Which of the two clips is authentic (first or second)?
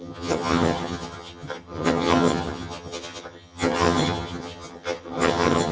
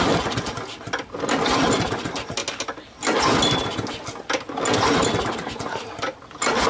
second